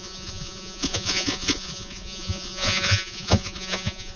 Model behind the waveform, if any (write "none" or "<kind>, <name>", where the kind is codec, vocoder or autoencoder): vocoder, Vocos